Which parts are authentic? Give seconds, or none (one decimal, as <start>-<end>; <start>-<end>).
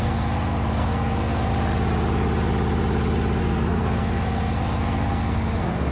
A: 1.5-3.4